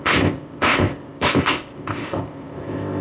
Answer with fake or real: fake